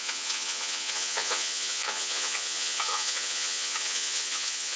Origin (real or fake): fake